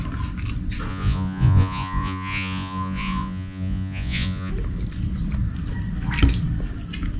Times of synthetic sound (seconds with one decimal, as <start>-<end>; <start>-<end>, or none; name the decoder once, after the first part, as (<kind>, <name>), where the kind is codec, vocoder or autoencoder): 0.9-4.5 (vocoder, Vocos)

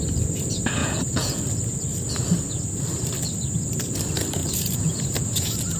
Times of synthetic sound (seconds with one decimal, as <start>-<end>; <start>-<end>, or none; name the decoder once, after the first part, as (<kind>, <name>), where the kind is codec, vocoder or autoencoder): 0.8-1.4 (vocoder, Vocos); 4.4-5.8

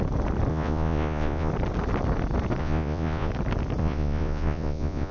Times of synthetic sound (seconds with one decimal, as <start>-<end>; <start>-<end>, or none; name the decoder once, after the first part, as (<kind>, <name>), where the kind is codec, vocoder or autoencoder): 0.5-1.5 (vocoder, Vocos); 2.6-3.3; 3.8-5.1

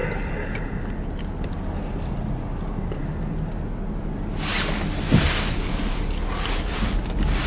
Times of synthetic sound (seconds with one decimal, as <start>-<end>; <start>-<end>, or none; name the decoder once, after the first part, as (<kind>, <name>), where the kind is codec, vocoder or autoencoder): none

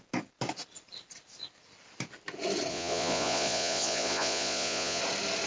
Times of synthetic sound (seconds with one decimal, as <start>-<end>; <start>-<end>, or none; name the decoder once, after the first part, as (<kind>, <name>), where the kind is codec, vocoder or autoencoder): 2.7-5.0 (vocoder, Vocos)

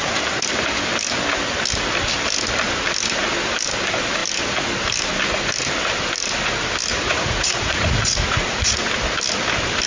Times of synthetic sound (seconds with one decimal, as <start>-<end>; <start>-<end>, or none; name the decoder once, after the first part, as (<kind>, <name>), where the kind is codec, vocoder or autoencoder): 6.9-8.9 (vocoder, Vocos)